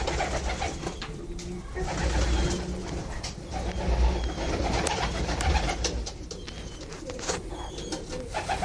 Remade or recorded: recorded